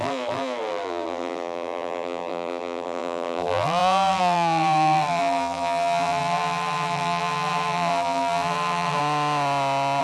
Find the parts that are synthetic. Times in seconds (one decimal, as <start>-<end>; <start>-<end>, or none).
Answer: 0.0-9.0